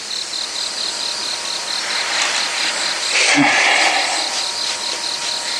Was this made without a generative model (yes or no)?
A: yes